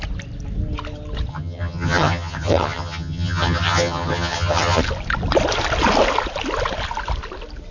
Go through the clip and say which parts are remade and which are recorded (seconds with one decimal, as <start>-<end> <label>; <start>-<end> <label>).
0.0-1.3 recorded; 1.3-4.8 remade; 4.8-7.7 recorded